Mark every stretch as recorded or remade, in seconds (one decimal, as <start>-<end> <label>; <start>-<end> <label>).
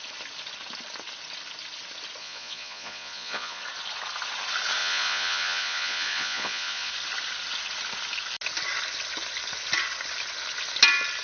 0.0-2.2 recorded; 2.2-3.6 remade; 3.6-4.8 recorded; 4.8-6.9 remade; 6.9-11.2 recorded